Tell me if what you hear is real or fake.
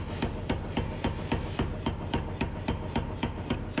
real